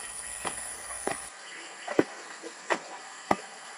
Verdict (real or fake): fake